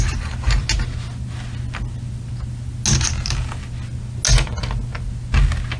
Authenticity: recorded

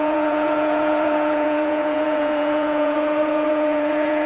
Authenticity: remade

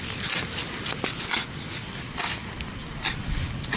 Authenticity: recorded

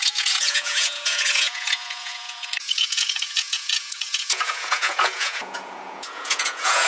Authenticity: remade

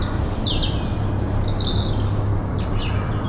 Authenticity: recorded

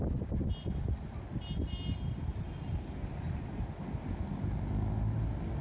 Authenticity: recorded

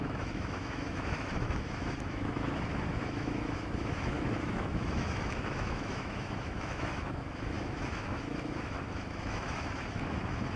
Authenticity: remade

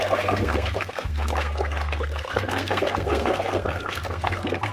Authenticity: remade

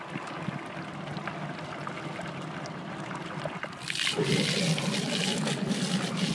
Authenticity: recorded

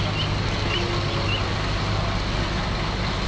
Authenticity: recorded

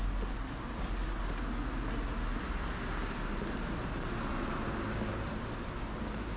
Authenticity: recorded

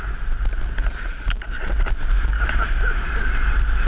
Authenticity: recorded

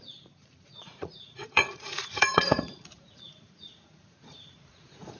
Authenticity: remade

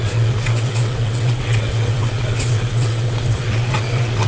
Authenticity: remade